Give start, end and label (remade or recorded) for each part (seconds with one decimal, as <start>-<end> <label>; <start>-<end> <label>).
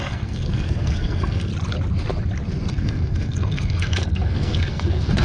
0.0-1.5 remade; 1.5-2.7 recorded; 2.7-5.2 remade